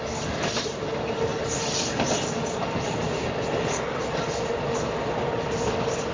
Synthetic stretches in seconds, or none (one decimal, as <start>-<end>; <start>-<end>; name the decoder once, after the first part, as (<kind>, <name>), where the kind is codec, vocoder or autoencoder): none

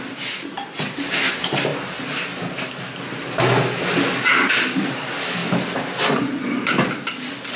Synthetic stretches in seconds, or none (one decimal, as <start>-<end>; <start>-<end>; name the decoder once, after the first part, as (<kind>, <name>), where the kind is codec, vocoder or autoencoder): none